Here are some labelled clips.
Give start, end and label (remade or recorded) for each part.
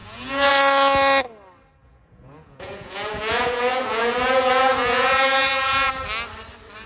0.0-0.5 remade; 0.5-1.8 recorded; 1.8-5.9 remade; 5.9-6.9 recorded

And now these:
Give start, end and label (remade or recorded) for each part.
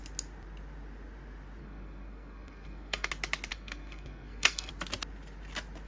0.0-1.6 recorded; 1.6-3.1 remade; 3.1-3.5 recorded; 3.5-4.7 remade; 4.7-5.9 recorded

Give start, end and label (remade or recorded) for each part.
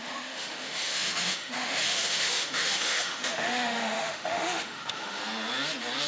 0.0-5.2 remade; 5.2-6.1 recorded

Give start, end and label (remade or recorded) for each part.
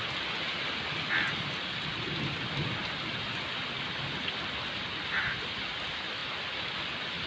0.0-7.3 recorded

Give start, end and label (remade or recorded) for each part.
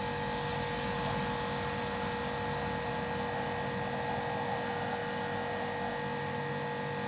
0.0-7.1 recorded